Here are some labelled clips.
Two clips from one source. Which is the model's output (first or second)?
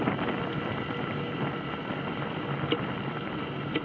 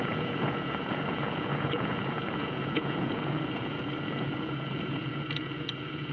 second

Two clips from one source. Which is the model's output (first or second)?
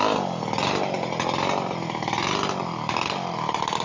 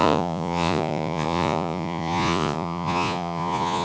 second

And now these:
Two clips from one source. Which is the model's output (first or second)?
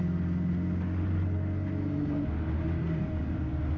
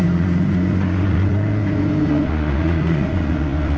second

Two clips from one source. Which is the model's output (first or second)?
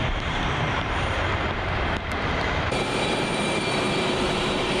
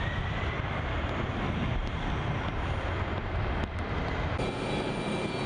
first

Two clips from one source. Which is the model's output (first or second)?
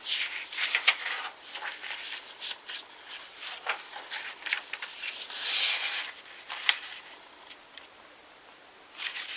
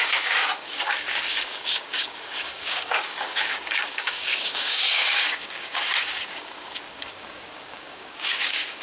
second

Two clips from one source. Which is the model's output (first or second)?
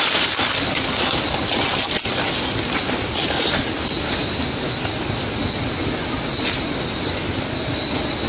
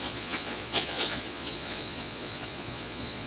second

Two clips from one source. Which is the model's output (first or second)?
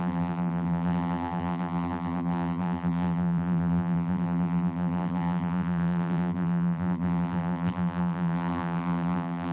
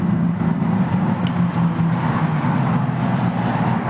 first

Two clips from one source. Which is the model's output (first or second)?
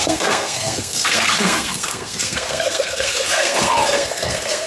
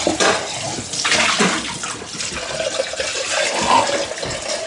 first